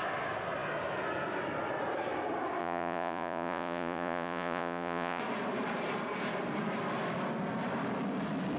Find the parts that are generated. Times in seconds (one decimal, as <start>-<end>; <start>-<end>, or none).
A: 2.6-5.2